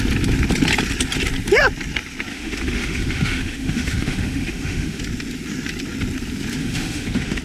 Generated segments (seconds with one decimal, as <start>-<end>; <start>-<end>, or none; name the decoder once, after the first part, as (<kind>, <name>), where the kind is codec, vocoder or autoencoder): 2.3-5.0 (autoencoder, DAC-VAE); 6.6-7.4